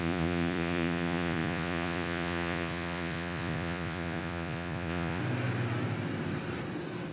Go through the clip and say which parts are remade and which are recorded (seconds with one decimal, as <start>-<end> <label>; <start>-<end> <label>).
0.0-5.2 remade; 5.2-7.1 recorded